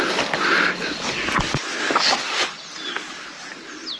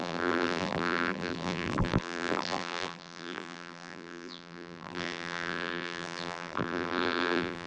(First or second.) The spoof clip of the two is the second